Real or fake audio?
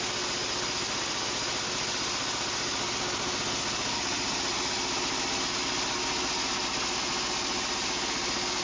real